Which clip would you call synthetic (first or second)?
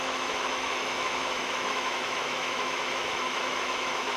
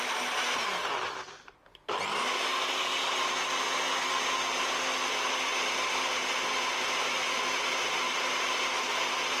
first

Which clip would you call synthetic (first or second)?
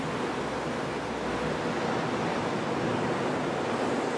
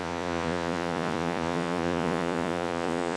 second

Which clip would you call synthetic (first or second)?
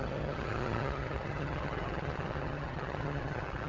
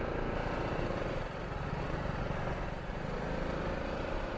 first